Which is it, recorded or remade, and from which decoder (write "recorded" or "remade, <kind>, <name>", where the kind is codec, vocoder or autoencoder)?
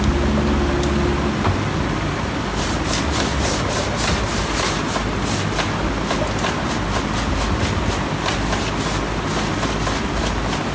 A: recorded